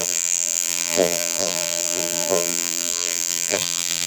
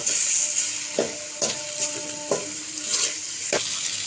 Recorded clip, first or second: second